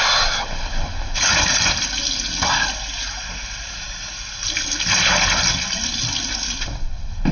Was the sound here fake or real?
real